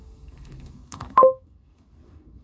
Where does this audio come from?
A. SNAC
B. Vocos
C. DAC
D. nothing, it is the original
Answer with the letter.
A